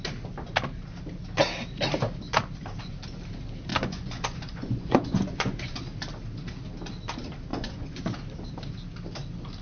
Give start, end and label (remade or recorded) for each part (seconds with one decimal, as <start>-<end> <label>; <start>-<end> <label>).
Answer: 0.0-3.7 recorded; 3.7-5.8 remade; 5.8-7.5 recorded; 7.5-8.0 remade; 8.0-9.6 recorded